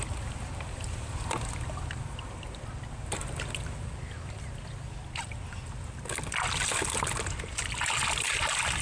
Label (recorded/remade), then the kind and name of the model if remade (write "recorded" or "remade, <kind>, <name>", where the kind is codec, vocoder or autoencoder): recorded